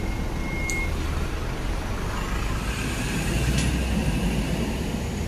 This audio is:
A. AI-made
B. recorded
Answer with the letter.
B